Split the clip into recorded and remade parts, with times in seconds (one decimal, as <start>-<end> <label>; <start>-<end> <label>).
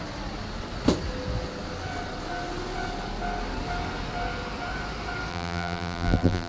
0.0-5.3 recorded; 5.3-6.5 remade